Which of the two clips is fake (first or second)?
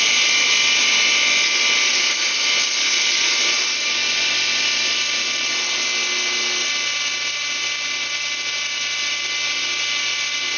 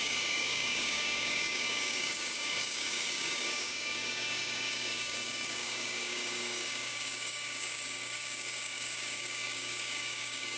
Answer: second